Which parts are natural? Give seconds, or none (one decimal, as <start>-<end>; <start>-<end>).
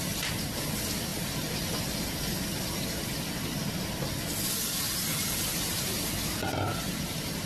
0.0-5.5; 6.1-7.5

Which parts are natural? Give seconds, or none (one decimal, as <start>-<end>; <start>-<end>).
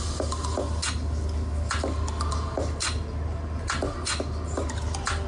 0.8-2.3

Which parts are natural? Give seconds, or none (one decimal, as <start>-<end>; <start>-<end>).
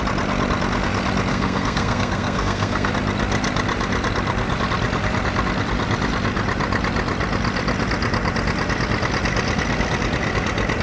0.0-1.3; 2.9-10.8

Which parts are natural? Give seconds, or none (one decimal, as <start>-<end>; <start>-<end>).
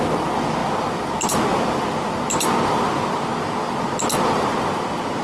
0.0-5.2